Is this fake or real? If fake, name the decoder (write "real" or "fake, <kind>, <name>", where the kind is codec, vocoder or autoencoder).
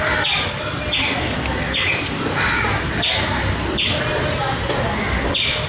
real